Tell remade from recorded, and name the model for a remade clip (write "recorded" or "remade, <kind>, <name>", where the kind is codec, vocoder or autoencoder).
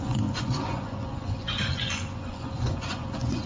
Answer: remade, vocoder, Vocos